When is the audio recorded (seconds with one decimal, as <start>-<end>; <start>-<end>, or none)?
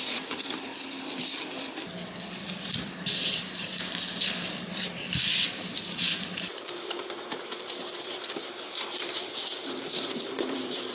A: 0.7-3.3; 3.7-4.8